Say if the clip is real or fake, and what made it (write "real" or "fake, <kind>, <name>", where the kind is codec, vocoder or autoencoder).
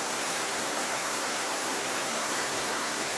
fake, codec, SNAC